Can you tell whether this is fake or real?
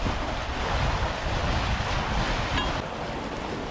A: real